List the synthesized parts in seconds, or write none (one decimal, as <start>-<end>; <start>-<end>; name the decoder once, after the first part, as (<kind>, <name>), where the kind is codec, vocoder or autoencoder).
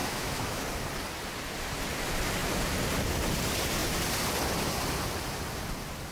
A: 0.0-0.6 (autoencoder, DAC-VAE)